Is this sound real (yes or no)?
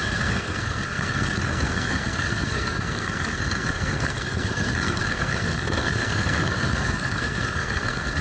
no